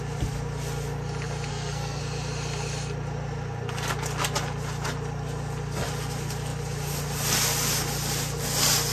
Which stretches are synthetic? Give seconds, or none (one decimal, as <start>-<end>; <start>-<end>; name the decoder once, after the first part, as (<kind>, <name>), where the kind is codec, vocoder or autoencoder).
1.5-2.0 (codec, SNAC)